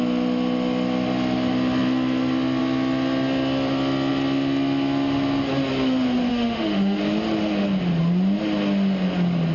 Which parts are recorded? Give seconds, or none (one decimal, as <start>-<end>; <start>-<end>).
0.0-6.3; 7.0-9.5